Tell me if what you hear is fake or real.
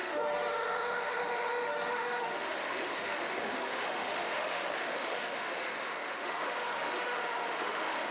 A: fake